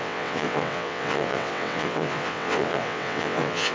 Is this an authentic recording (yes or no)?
no